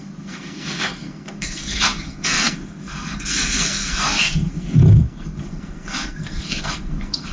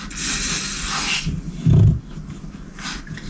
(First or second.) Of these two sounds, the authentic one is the second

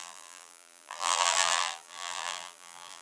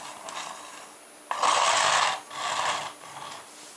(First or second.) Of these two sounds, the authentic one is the second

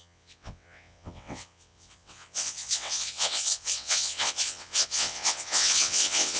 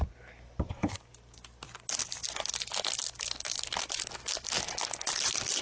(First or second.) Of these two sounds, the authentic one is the second